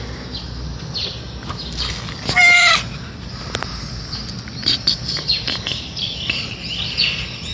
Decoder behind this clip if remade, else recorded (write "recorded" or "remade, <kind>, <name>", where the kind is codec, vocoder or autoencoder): recorded